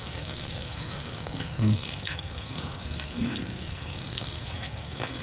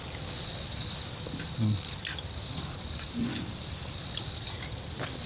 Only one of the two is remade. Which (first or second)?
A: first